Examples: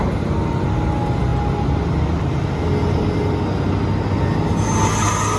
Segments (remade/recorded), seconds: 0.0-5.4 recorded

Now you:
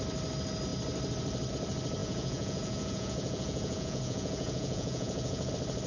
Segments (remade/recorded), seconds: 0.0-2.0 recorded; 2.0-5.5 remade; 5.5-5.9 recorded